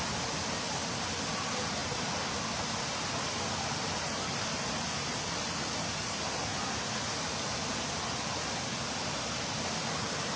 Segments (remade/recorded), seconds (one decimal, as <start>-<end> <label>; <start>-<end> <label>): 0.0-10.4 recorded